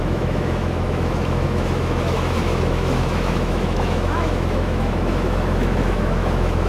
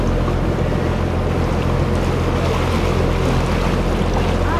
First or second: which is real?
second